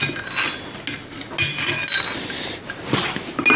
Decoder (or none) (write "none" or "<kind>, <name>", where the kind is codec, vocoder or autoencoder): none